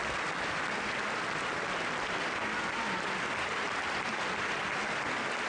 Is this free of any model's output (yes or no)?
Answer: yes